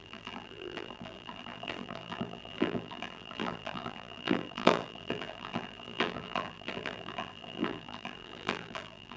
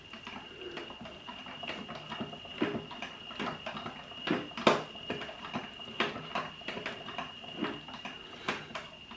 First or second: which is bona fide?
second